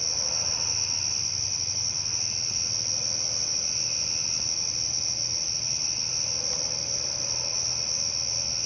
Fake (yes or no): no